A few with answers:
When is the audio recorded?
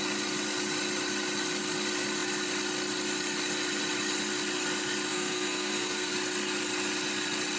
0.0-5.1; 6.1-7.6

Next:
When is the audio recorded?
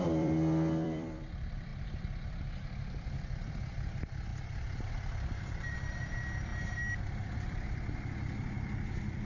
4.3-4.9; 6.5-7.0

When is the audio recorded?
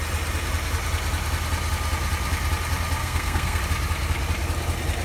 0.0-3.0; 3.6-5.0